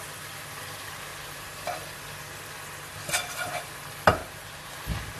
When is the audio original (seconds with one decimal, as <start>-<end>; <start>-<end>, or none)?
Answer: 0.0-1.1; 2.0-4.2; 4.7-5.2